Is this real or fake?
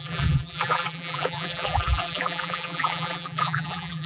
fake